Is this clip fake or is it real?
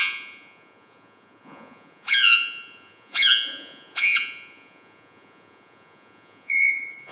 fake